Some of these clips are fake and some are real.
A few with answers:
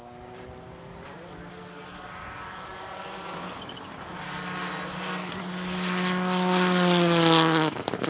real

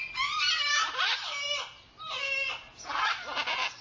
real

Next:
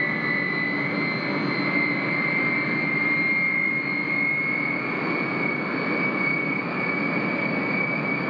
real